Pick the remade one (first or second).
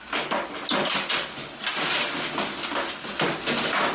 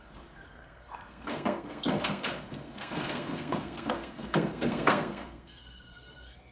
second